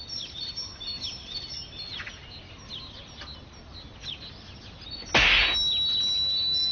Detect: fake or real real